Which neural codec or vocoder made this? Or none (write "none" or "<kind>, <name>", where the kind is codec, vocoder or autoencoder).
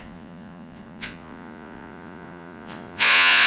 vocoder, Vocos